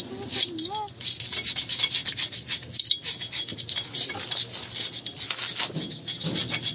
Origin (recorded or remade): recorded